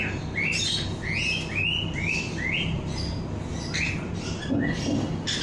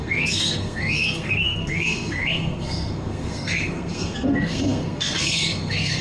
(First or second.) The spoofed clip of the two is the second